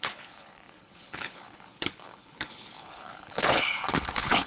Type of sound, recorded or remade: remade